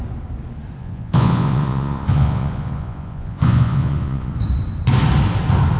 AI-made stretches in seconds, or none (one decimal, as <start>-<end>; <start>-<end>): 0.8-4.3